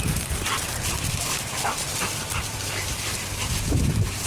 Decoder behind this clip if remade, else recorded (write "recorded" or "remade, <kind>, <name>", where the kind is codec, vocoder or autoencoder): remade, vocoder, BigVGAN v2